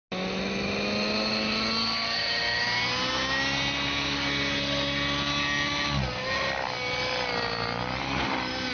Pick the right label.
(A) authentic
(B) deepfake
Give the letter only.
A